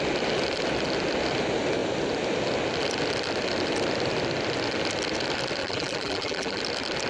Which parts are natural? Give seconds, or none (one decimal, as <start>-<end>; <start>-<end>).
0.0-5.6; 6.6-7.1